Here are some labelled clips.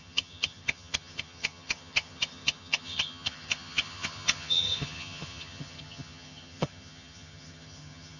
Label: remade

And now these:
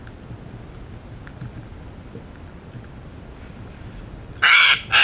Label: recorded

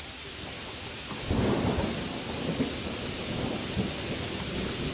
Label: recorded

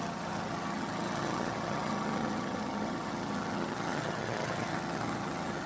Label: remade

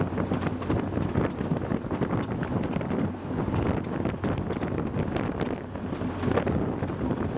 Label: recorded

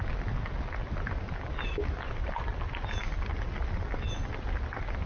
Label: recorded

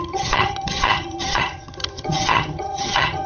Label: remade